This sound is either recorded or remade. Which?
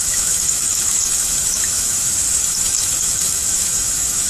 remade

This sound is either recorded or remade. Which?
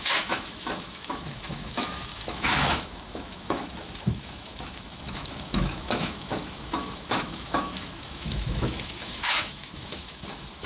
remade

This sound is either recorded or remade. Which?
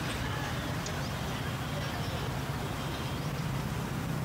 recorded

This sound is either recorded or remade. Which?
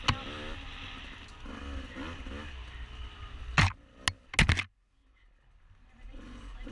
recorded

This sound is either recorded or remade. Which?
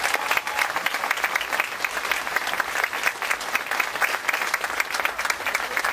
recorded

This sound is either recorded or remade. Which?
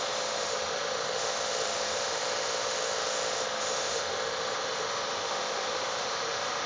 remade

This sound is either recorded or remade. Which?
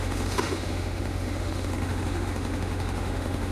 remade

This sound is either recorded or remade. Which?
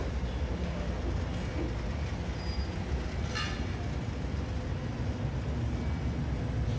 recorded